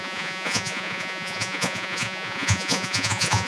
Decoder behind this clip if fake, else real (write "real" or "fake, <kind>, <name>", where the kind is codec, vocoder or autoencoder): fake, vocoder, Vocos